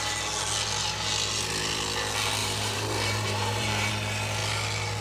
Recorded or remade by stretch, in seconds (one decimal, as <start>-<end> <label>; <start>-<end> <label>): 0.0-2.4 recorded; 2.4-3.9 remade; 3.9-5.0 recorded